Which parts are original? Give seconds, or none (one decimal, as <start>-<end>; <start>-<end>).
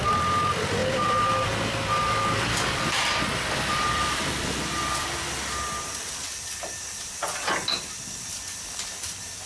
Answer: 7.2-8.5